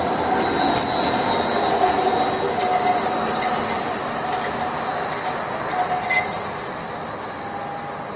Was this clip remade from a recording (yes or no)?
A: no